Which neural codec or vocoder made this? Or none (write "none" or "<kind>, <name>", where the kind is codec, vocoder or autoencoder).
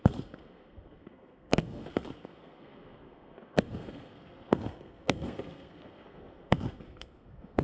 codec, SNAC